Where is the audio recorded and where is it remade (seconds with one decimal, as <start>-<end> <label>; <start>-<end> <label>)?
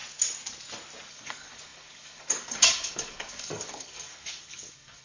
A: 0.0-1.1 recorded; 1.1-5.0 remade